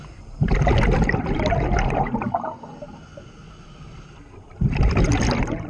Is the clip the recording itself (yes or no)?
yes